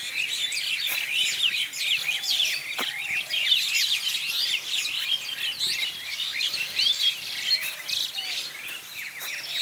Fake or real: real